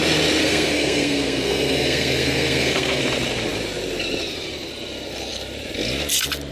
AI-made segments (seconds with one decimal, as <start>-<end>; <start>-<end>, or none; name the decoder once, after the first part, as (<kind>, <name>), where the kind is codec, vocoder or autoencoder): 0.4-3.0 (codec, SNAC)

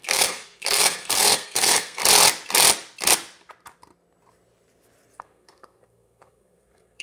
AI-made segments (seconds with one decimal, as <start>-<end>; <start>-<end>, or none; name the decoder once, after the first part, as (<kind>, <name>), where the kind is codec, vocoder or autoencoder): 0.0-2.0 (codec, SNAC); 5.2-7.0

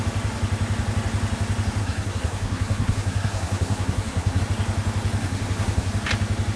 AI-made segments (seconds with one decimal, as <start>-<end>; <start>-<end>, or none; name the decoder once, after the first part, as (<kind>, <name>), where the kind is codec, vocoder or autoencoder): 1.8-4.4 (codec, SNAC); 5.2-5.9

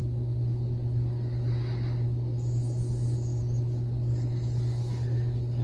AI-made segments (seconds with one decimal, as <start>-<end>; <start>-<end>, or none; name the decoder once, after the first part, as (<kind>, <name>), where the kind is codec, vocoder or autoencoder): none

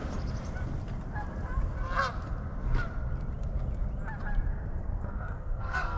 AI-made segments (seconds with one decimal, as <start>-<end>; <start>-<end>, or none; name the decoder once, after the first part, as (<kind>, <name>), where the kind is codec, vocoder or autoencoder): 4.5-6.0 (codec, SNAC)

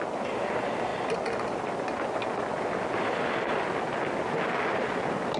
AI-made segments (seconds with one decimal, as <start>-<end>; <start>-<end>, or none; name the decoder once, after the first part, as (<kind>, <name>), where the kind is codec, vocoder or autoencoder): none